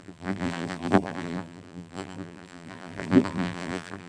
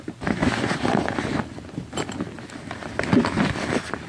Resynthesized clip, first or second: first